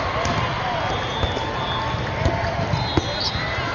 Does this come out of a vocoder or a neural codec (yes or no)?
no